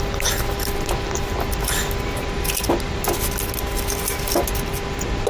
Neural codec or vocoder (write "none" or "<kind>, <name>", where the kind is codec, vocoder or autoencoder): none